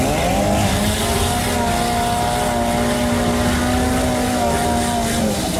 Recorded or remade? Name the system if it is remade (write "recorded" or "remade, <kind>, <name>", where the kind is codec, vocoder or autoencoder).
recorded